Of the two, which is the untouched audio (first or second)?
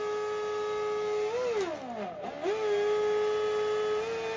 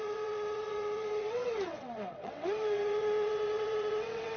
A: first